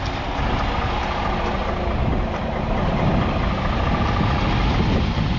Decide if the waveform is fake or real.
real